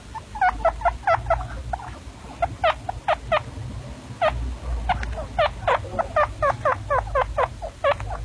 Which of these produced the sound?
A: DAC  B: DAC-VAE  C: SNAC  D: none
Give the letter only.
D